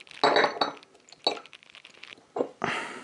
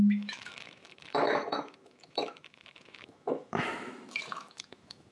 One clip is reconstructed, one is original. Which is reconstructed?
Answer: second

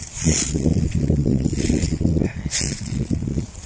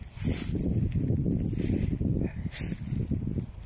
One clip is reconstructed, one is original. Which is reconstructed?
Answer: first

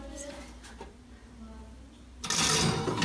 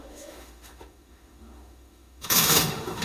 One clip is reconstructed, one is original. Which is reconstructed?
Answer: second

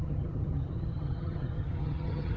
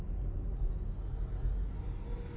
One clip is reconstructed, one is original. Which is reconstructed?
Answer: first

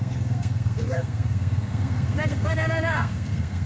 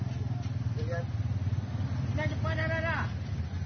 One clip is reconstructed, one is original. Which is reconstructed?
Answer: first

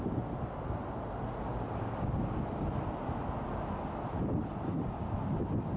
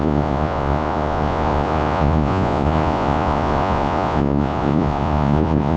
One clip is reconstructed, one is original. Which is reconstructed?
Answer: second